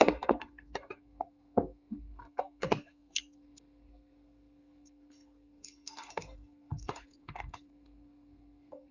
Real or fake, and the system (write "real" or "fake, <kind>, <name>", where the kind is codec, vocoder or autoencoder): fake, codec, SNAC